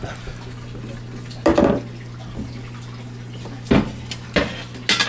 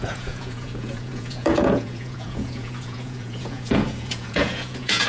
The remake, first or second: second